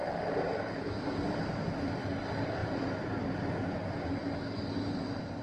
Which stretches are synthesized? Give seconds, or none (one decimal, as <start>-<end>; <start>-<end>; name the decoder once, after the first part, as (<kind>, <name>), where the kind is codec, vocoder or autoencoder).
0.0-1.9 (vocoder, BigVGAN v2); 2.6-3.5